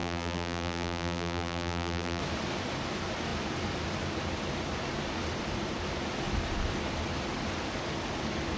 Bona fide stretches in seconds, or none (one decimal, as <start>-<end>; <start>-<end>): 2.2-8.6